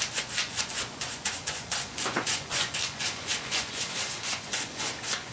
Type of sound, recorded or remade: remade